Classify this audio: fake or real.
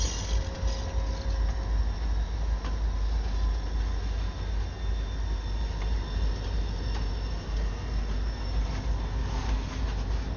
real